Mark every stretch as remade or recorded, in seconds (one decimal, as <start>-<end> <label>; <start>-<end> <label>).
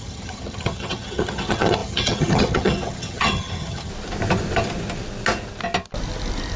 0.0-3.9 remade; 3.9-6.6 recorded